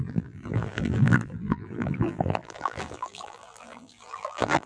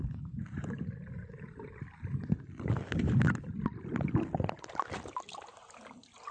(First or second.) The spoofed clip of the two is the first